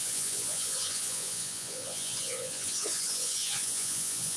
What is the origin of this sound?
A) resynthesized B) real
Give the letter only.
A